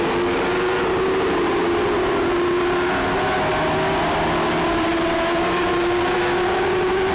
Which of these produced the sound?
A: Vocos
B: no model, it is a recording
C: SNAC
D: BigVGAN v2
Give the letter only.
B